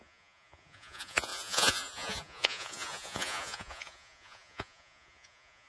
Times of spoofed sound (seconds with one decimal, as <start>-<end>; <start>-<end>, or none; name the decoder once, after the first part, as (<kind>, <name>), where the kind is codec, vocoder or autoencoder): 0.0-5.7 (vocoder, Vocos)